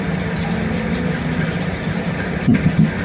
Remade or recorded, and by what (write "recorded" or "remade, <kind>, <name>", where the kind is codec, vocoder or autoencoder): recorded